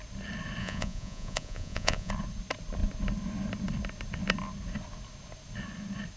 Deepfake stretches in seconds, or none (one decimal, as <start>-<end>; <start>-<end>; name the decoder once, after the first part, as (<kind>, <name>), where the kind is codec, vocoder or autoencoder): 0.6-2.1 (vocoder, Vocos)